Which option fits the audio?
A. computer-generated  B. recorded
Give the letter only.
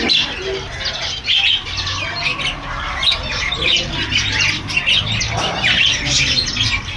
B